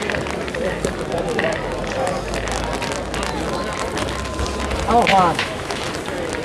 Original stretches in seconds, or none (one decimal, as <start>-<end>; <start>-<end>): 0.0-5.1; 5.8-6.4